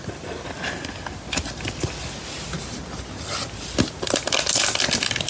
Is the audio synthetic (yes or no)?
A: no